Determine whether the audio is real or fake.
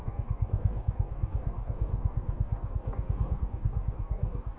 fake